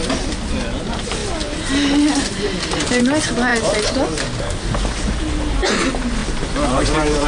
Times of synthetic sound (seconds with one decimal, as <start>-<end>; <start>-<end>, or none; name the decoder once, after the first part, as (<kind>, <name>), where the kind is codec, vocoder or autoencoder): none